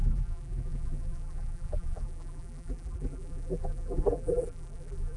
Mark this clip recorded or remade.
remade